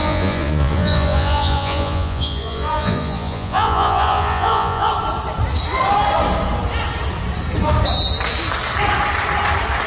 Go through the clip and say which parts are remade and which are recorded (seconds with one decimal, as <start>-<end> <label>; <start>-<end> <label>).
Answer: 0.0-4.9 remade; 4.9-9.9 recorded